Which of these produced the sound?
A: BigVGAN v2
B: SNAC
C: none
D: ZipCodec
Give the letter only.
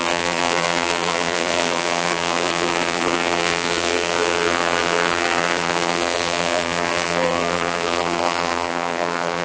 A